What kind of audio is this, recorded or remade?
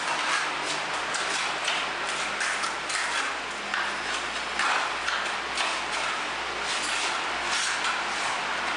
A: recorded